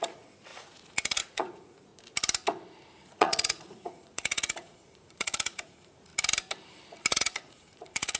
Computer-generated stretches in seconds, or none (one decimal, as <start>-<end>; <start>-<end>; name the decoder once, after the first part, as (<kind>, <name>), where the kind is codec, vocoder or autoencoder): 0.0-1.9 (vocoder, Vocos); 3.1-6.1; 7.1-8.2